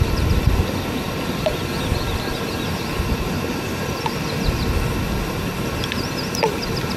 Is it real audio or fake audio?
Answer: real